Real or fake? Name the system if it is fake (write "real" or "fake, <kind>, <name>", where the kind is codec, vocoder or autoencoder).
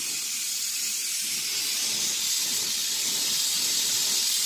real